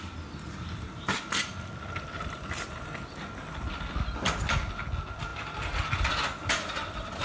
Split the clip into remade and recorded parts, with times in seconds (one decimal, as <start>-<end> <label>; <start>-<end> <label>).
0.0-7.2 recorded